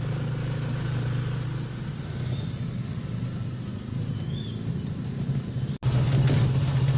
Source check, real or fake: real